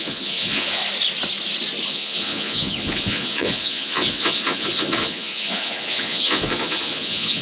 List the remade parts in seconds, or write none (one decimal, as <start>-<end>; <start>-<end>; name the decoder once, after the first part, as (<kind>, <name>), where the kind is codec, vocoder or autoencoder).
0.0-0.8 (vocoder, Vocos); 1.9-7.4